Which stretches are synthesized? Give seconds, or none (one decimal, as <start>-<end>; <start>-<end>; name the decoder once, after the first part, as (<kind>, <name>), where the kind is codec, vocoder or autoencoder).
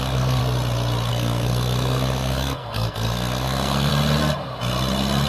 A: 0.0-0.4 (codec, SNAC); 1.1-3.9